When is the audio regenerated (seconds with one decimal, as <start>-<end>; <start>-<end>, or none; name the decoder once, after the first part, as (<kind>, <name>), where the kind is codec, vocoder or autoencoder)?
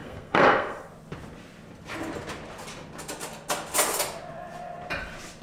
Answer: 0.0-0.9 (codec, SNAC)